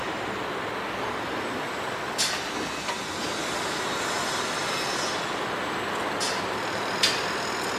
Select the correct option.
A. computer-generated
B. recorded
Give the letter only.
B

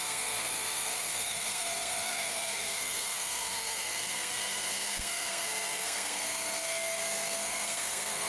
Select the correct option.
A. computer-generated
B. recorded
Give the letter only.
A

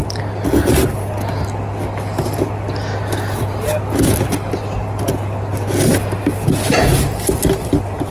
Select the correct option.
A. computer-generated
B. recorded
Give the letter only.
B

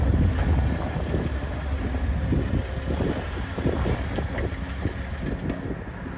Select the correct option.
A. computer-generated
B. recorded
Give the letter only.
B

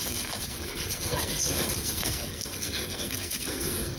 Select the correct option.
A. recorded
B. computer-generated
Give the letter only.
B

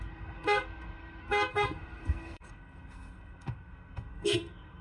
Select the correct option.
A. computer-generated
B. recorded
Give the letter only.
A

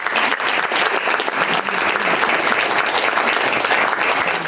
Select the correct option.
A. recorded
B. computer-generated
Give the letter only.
A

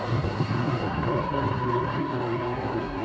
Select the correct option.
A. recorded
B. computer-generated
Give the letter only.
B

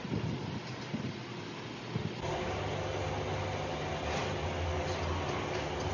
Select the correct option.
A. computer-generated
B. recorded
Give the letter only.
B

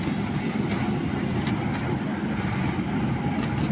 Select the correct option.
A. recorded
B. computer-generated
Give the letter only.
A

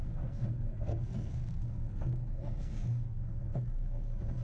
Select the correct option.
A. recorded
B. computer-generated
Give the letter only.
B